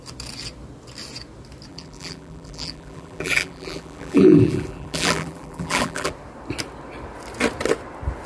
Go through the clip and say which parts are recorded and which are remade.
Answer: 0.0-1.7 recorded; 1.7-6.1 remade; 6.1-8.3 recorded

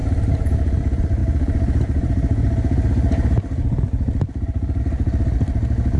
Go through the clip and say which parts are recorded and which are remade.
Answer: 0.0-0.6 remade; 0.6-1.2 recorded; 1.2-4.8 remade; 4.8-6.0 recorded

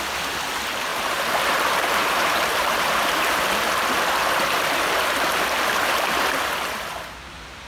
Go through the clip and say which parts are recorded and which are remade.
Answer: 0.0-0.9 recorded; 0.9-1.4 remade; 1.4-2.0 recorded; 2.0-3.4 remade; 3.4-7.7 recorded

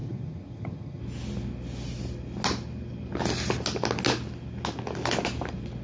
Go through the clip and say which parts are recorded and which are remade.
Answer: 0.0-1.0 remade; 1.0-5.8 recorded

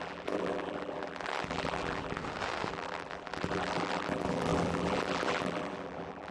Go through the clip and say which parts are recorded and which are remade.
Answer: 0.0-2.2 remade; 2.2-2.7 recorded; 2.7-6.3 remade

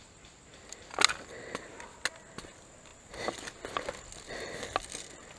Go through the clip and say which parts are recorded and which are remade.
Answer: 0.0-5.4 recorded

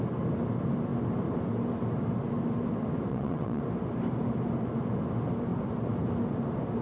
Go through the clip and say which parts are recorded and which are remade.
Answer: 0.0-3.1 recorded; 3.1-3.6 remade; 3.6-6.8 recorded